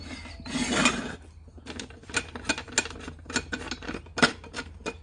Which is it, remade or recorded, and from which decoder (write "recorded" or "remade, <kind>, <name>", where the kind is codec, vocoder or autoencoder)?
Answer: recorded